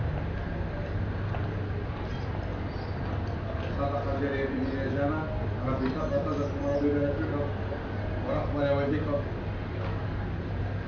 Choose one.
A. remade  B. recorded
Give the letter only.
B